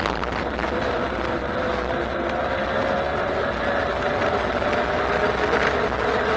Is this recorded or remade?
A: recorded